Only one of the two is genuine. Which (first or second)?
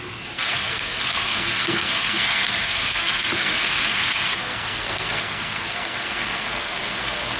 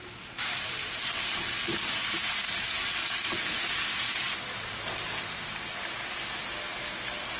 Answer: second